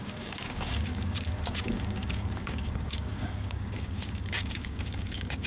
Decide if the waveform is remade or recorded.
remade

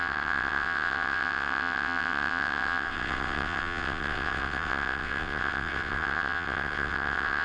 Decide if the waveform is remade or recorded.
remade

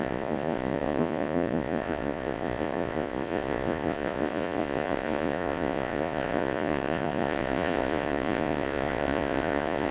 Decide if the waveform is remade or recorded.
remade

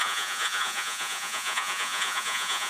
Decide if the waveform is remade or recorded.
remade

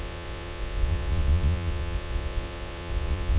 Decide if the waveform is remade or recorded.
remade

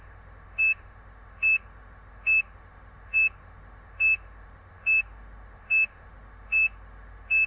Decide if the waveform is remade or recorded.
remade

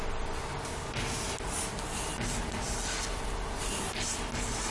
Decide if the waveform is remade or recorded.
recorded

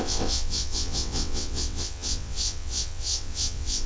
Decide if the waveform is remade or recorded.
remade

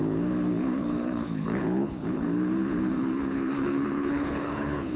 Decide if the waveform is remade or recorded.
remade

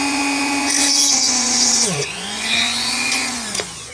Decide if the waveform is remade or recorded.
remade